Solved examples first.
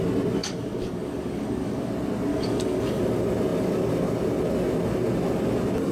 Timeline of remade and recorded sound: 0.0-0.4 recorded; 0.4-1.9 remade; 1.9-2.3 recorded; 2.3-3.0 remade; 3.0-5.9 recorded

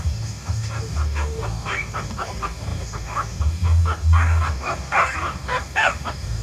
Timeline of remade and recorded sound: 0.0-6.4 remade

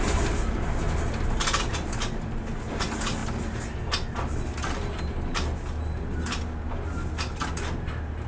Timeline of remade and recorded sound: 0.0-8.3 recorded

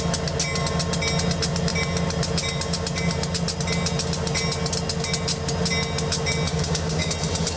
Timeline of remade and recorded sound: 0.0-6.5 recorded; 6.5-7.1 remade; 7.1-7.6 recorded

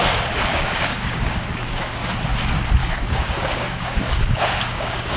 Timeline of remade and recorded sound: 0.0-0.5 recorded; 0.5-2.1 remade; 2.1-2.8 recorded; 2.8-5.2 remade

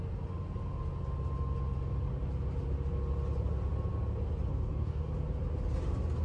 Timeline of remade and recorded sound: 0.0-4.5 recorded; 4.5-5.1 remade; 5.1-6.2 recorded